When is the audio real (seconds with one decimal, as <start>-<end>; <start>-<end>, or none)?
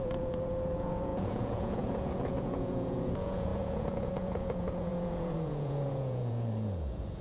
none